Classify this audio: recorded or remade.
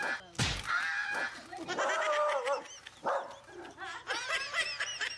recorded